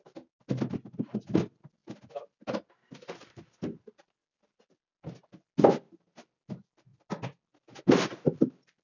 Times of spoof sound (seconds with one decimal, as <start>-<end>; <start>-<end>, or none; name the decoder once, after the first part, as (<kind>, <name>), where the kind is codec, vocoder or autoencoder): none